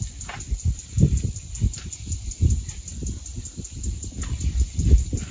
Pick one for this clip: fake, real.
real